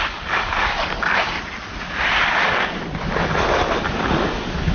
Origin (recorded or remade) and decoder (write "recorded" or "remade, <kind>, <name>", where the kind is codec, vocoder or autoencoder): recorded